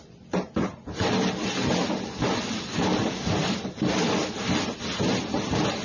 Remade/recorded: recorded